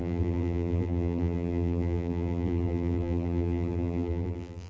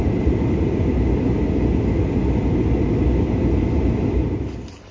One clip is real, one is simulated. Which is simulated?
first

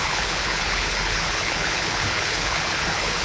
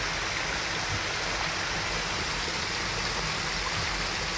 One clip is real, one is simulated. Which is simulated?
first